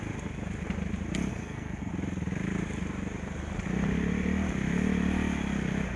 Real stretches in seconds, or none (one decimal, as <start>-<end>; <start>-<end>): 0.0-1.3; 1.9-6.0